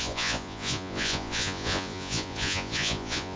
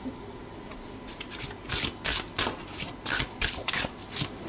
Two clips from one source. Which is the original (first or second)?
second